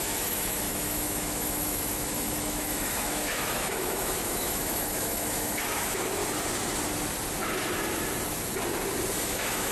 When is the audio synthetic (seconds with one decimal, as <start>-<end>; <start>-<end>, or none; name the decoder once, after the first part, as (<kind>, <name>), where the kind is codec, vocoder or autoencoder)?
0.0-6.2 (autoencoder, DAC-VAE); 9.2-9.7